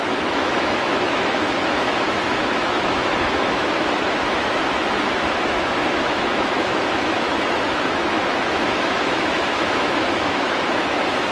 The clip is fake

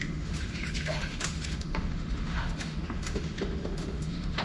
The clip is fake